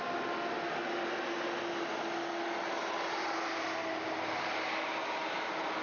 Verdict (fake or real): real